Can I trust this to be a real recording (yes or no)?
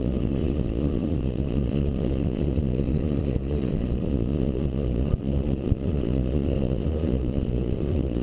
no